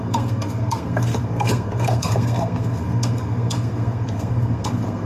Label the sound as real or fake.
fake